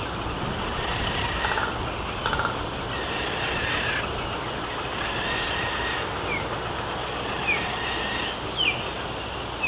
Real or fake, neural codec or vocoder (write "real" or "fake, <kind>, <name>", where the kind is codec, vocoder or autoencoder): real